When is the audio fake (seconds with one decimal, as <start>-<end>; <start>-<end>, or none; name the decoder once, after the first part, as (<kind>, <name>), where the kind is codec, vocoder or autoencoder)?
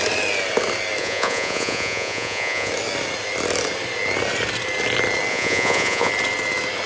1.0-2.7 (vocoder, Vocos); 5.3-6.1